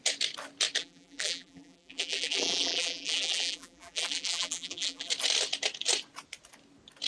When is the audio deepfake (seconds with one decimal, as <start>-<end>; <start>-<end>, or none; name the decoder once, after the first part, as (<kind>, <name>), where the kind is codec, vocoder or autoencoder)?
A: 0.8-5.1 (vocoder, BigVGAN v2)